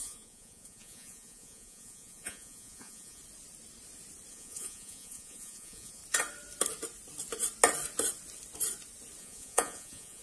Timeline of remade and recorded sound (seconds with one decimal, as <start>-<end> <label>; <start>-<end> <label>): 0.0-3.2 remade; 3.2-4.3 recorded; 4.3-6.0 remade; 6.0-9.2 recorded; 9.2-10.2 remade